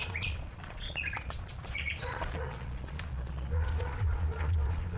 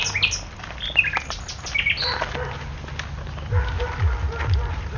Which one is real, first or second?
second